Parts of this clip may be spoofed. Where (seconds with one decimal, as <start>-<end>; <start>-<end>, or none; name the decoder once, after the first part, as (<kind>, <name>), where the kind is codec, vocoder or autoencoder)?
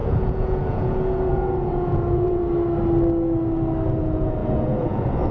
0.0-2.4 (vocoder, Vocos); 4.0-5.3